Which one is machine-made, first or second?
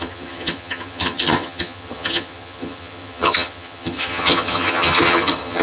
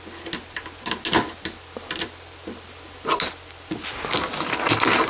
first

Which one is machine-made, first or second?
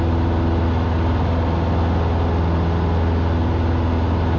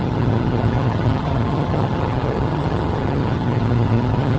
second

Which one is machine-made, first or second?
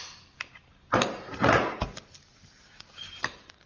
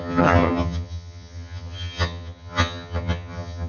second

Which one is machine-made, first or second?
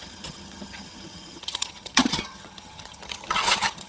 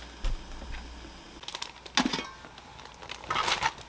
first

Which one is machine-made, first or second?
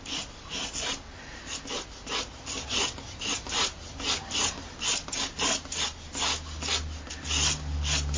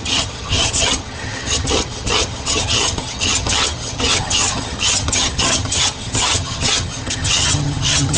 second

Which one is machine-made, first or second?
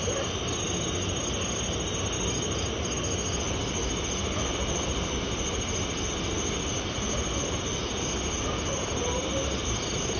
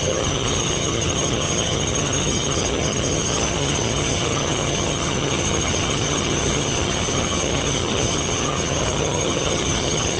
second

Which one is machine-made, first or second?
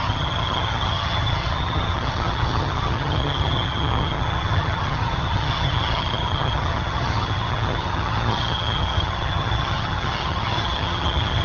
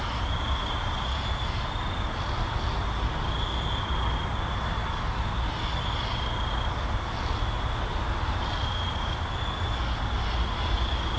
first